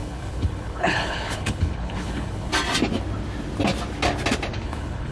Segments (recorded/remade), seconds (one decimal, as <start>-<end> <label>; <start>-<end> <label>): 0.0-2.5 remade; 2.5-4.5 recorded; 4.5-5.1 remade